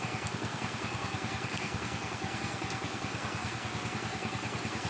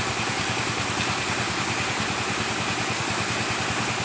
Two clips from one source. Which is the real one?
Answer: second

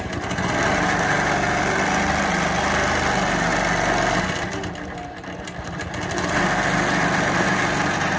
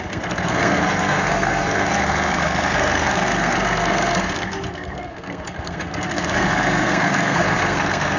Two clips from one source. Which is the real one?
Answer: first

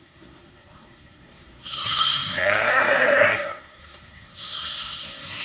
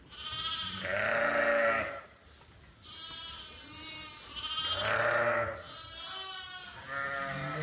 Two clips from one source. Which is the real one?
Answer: second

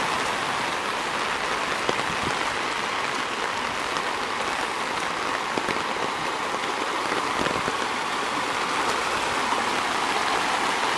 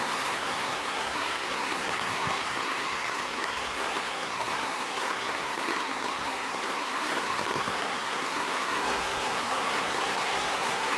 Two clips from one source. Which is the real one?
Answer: first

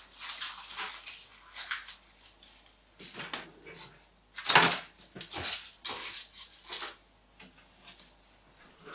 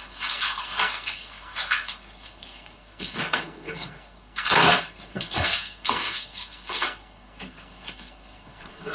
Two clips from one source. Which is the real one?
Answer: first